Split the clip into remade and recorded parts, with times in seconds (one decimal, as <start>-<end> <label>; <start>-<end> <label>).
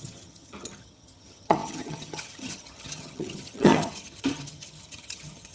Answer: 0.0-5.5 remade